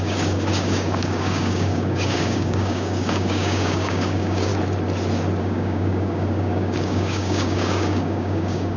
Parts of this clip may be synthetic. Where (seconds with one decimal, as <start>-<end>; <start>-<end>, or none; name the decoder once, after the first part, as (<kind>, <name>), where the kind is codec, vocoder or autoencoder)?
0.0-4.5 (codec, DAC); 5.4-8.8